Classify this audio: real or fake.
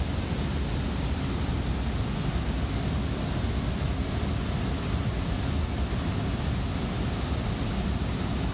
real